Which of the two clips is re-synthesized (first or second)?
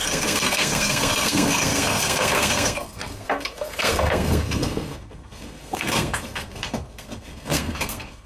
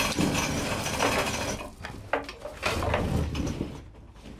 first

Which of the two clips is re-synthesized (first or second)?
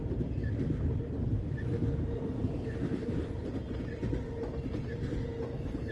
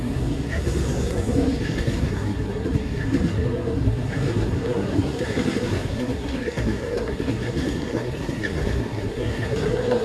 second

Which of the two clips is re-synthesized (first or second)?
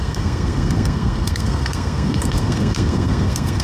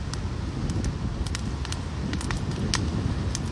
first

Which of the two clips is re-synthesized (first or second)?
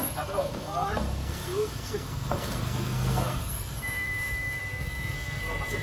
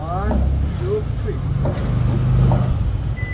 first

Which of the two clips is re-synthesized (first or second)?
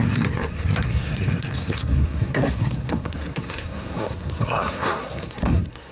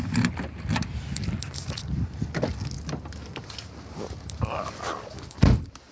first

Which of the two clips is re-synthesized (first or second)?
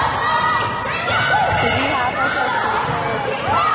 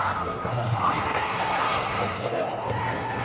second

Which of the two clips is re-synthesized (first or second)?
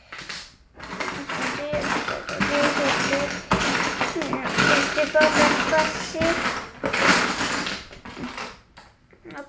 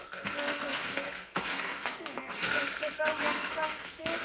second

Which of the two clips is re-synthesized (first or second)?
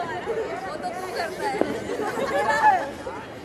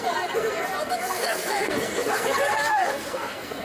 second